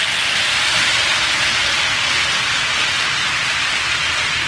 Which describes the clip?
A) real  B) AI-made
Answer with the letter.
A